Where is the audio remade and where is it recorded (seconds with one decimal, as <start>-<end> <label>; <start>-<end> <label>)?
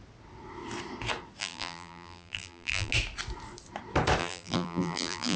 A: 0.0-1.4 recorded; 1.4-2.9 remade; 2.9-4.2 recorded; 4.2-5.4 remade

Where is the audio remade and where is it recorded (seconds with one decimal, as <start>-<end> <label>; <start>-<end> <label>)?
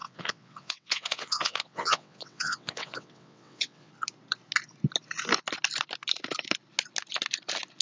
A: 0.0-3.9 remade; 3.9-7.8 recorded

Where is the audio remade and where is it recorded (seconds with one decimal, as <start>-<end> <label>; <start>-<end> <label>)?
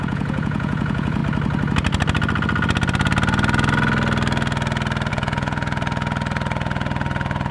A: 0.0-1.2 remade; 1.2-5.1 recorded; 5.1-7.5 remade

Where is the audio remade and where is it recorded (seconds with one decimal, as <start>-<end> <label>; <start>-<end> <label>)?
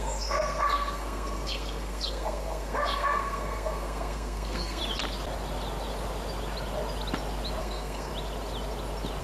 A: 0.0-4.8 remade; 4.8-7.6 recorded; 7.6-8.1 remade; 8.1-9.2 recorded